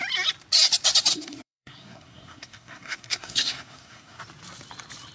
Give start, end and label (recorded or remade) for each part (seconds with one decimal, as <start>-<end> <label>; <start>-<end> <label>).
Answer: 0.0-1.1 recorded; 1.1-4.2 remade; 4.2-5.1 recorded

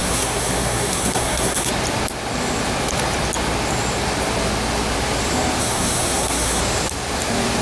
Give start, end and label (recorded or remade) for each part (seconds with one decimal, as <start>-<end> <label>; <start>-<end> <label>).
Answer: 0.0-1.7 remade; 1.7-5.6 recorded; 5.6-6.6 remade; 6.6-7.6 recorded

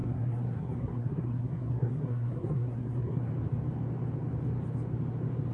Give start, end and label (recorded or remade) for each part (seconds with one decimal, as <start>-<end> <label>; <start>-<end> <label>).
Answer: 0.0-3.3 remade; 3.3-5.5 recorded

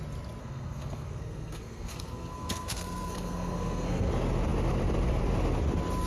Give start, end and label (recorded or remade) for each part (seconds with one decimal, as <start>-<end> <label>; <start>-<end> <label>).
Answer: 0.0-0.4 recorded; 0.4-4.1 remade; 4.1-6.1 recorded